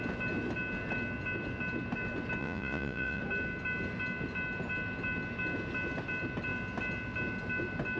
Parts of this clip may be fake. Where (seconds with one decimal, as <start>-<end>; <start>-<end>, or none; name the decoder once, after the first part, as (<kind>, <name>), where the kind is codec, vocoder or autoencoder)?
2.4-3.2 (vocoder, Vocos)